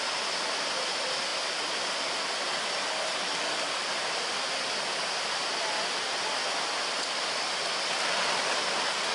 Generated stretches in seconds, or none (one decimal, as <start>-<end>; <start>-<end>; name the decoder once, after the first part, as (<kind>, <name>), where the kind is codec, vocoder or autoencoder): none

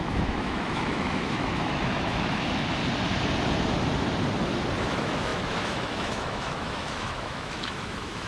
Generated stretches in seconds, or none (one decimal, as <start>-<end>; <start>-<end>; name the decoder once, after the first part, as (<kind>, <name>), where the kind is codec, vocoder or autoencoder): 0.0-2.8 (autoencoder, DAC-VAE); 4.8-8.3